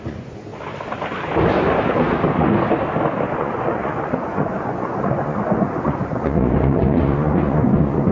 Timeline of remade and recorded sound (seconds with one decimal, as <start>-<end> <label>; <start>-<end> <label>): 0.0-0.5 remade; 0.5-3.4 recorded; 3.4-8.1 remade